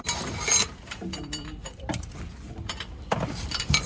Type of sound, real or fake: fake